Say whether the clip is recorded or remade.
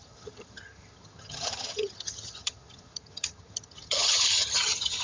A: remade